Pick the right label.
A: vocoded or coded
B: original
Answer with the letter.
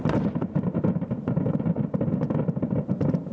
B